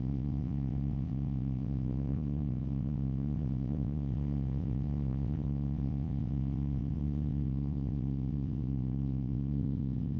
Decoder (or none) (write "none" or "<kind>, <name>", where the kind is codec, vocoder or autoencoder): vocoder, WaveNeXt